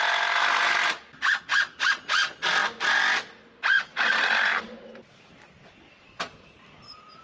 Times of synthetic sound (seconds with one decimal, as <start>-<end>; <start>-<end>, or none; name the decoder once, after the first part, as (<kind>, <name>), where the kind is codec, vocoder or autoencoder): none